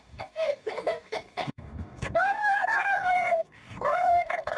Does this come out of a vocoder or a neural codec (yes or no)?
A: yes